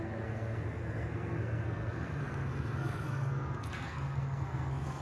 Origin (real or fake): fake